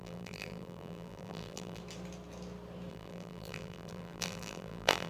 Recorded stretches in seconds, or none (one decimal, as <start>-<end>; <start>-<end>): 1.8-2.9